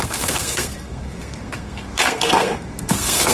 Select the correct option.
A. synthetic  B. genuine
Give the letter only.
A